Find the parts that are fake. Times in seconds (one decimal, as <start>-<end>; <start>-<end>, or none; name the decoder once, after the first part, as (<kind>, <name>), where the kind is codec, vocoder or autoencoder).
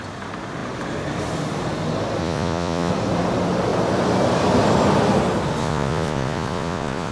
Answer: 2.2-2.9 (vocoder, Vocos); 5.6-7.1